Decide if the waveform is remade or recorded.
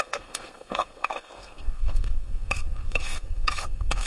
remade